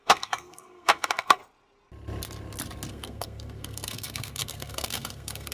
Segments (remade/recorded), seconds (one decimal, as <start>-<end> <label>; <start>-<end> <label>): 0.0-1.4 remade; 1.4-2.9 recorded; 2.9-5.5 remade